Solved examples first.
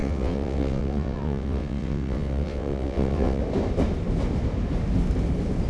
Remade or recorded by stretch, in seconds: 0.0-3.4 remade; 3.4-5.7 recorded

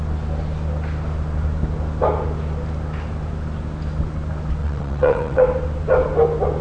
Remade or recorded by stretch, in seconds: 0.0-4.6 recorded; 4.6-5.4 remade; 5.4-6.6 recorded

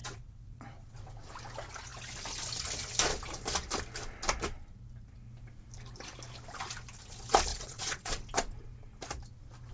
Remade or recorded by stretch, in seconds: 0.0-1.3 remade; 1.3-7.5 recorded; 7.5-8.1 remade; 8.1-9.7 recorded